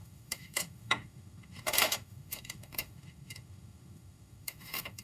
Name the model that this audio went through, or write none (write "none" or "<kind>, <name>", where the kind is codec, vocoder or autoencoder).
autoencoder, DAC-VAE